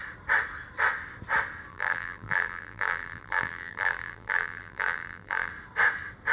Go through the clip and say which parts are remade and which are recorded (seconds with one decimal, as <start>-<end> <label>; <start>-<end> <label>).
0.0-1.7 recorded; 1.7-5.5 remade; 5.5-6.3 recorded